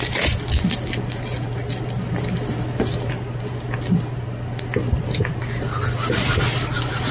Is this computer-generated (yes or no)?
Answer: no